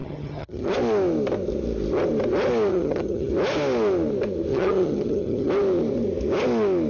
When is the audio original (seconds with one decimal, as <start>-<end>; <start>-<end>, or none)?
0.7-2.7; 3.3-4.5; 5.5-6.9